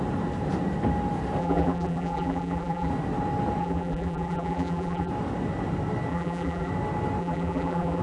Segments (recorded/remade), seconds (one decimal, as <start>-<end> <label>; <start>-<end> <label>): 0.0-1.4 recorded; 1.4-2.9 remade; 2.9-3.6 recorded; 3.6-5.1 remade; 5.1-6.1 recorded; 6.1-6.7 remade; 6.7-7.2 recorded; 7.2-8.0 remade